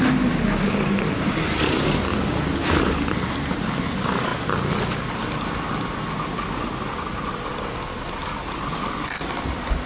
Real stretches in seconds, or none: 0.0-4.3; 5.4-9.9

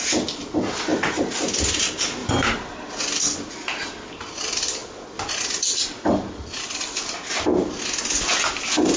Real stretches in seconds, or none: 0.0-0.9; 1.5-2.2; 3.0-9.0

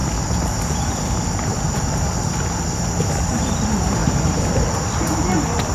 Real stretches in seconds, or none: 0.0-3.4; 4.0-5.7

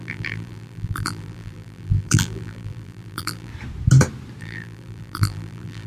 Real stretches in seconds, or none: 3.5-4.4

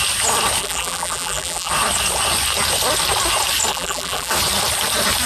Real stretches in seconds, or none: 0.0-0.6; 1.7-3.7; 4.3-5.3

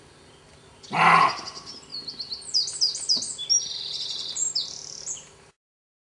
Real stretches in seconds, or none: 0.0-6.0